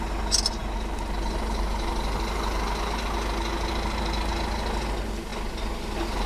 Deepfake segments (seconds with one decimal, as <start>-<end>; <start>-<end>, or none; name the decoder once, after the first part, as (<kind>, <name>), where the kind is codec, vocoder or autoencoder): none